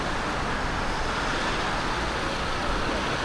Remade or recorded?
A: recorded